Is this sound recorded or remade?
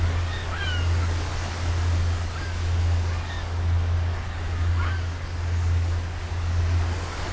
remade